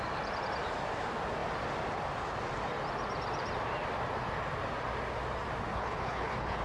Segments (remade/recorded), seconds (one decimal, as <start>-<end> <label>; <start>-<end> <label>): 0.0-5.7 recorded; 5.7-6.6 remade